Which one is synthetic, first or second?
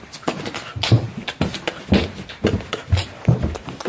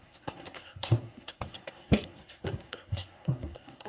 second